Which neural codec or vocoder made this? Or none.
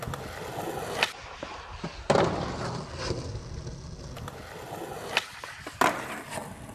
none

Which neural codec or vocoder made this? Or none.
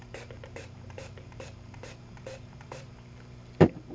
vocoder, BigVGAN v2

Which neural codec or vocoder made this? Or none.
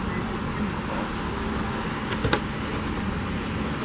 none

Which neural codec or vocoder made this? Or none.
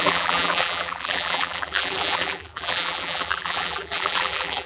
vocoder, BigVGAN v2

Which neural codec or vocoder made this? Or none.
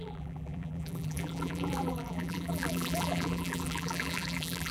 vocoder, BigVGAN v2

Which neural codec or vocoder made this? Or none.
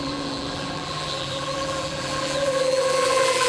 vocoder, BigVGAN v2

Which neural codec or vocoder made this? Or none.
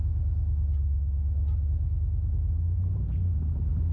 none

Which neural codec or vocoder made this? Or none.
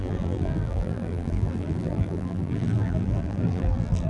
vocoder, BigVGAN v2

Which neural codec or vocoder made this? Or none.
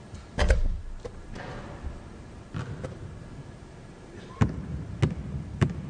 none